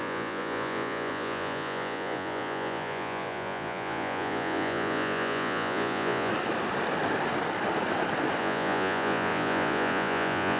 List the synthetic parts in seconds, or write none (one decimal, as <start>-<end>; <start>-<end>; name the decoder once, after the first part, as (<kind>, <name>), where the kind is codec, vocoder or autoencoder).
0.0-6.3 (vocoder, Vocos); 8.4-10.6